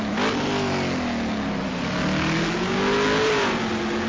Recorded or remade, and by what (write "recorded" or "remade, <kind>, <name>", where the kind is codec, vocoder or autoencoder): recorded